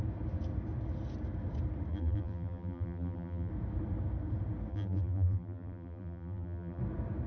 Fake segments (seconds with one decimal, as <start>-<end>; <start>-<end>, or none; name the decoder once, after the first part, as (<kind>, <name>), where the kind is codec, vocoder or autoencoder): 1.9-3.5 (vocoder, BigVGAN v2); 4.7-6.8